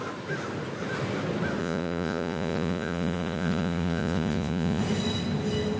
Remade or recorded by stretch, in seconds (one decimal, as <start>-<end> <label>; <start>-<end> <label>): 0.0-1.6 recorded; 1.6-4.8 remade; 4.8-5.8 recorded